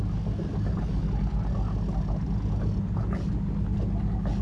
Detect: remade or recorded recorded